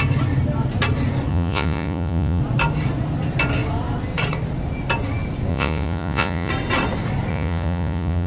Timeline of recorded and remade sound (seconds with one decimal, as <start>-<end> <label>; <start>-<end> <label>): 0.0-1.3 recorded; 1.3-2.4 remade; 2.4-5.5 recorded; 5.5-6.5 remade; 6.5-7.3 recorded; 7.3-8.3 remade